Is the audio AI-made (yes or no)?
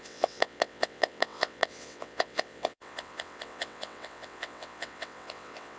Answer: yes